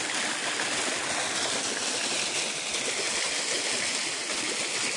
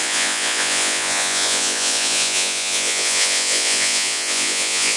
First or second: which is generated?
second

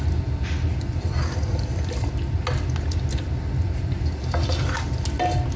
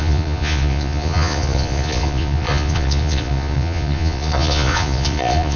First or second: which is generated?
second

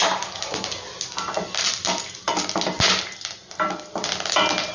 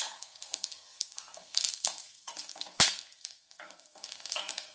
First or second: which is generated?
second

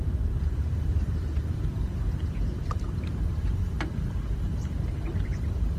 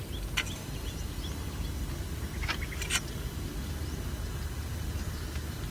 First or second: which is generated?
first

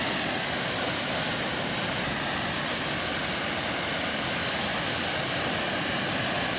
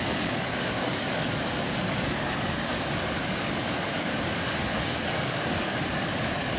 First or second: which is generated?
second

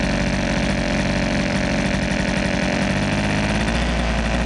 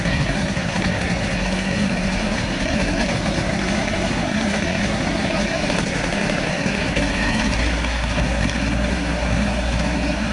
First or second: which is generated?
second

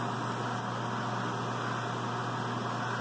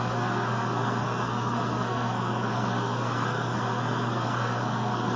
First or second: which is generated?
second